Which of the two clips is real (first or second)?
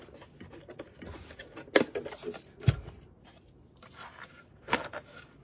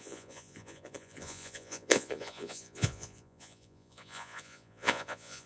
first